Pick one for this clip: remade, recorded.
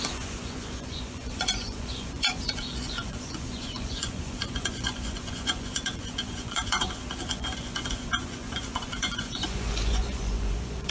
remade